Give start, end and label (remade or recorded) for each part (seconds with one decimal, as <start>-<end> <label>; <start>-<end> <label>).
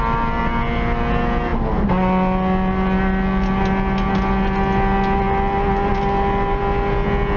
0.0-7.4 recorded